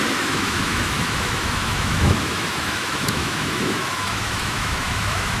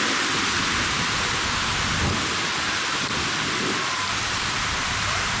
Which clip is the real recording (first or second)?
second